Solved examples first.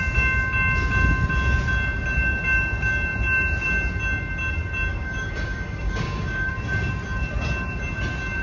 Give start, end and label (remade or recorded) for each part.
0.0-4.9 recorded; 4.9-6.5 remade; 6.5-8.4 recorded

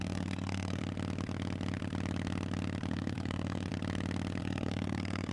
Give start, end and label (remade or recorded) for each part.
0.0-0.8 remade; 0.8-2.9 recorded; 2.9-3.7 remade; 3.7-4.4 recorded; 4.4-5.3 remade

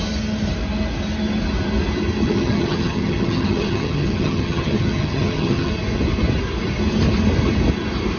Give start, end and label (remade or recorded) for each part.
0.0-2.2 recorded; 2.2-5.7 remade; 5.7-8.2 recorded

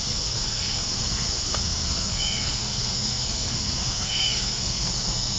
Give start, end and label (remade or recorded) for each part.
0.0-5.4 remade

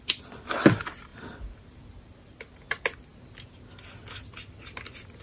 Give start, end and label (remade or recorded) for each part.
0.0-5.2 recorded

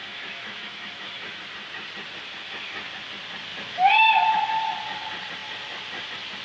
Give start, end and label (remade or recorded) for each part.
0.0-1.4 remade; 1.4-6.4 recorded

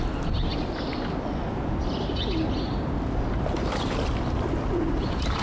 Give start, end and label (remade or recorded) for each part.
0.0-5.4 recorded